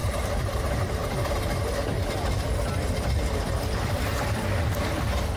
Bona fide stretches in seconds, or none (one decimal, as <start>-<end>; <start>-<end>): 0.0-1.0; 4.2-5.4